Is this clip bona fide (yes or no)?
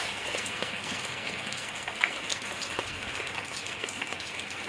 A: no